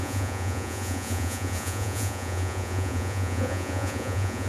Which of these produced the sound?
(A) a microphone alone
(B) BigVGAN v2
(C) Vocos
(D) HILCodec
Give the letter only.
C